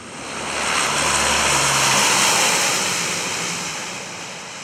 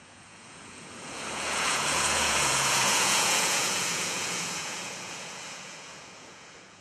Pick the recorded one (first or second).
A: first